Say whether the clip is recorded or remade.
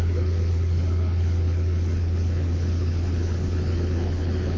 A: remade